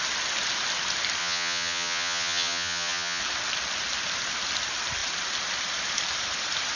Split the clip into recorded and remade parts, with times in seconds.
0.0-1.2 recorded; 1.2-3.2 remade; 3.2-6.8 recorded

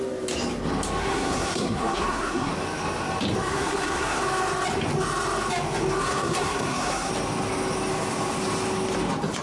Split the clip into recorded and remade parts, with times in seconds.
0.0-1.0 recorded; 1.0-2.5 remade; 2.5-3.5 recorded; 3.5-4.2 remade; 4.2-6.0 recorded; 6.0-7.1 remade; 7.1-9.4 recorded

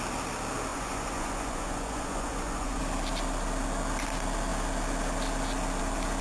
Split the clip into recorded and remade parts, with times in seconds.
0.0-0.7 recorded; 0.7-2.8 remade; 2.8-6.2 recorded

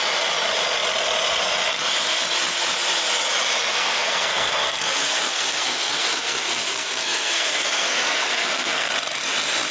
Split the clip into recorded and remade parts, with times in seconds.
0.0-3.7 recorded; 3.7-8.9 remade; 8.9-9.7 recorded

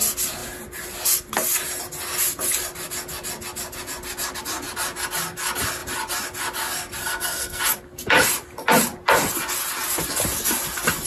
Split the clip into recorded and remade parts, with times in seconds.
0.0-7.0 recorded; 7.0-7.6 remade; 7.6-11.1 recorded

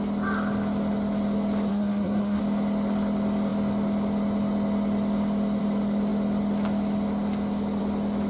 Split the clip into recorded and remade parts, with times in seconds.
0.0-1.7 recorded; 1.7-2.4 remade; 2.4-8.3 recorded

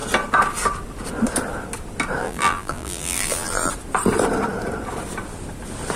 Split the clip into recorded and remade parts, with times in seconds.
0.0-2.2 recorded; 2.2-3.7 remade; 3.7-6.0 recorded